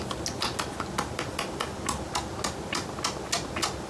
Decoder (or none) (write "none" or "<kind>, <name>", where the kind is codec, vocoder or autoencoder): none